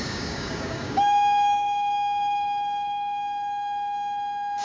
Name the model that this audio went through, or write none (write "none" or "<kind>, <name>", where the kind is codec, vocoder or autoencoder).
codec, DAC